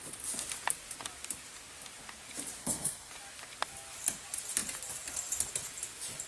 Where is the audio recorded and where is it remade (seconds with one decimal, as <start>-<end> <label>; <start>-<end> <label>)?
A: 0.0-2.6 recorded; 2.6-3.1 remade; 3.1-6.3 recorded